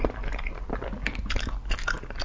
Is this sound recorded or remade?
recorded